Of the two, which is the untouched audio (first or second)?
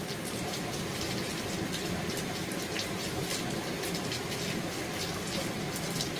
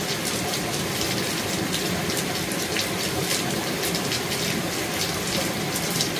first